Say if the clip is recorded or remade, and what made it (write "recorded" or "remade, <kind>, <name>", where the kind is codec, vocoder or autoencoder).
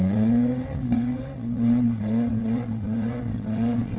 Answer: remade, vocoder, WaveNeXt